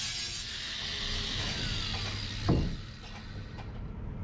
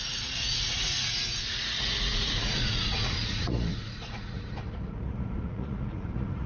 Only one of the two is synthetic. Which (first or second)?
second